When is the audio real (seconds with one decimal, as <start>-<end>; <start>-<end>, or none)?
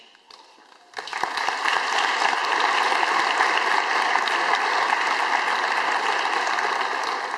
0.0-2.4; 4.2-7.4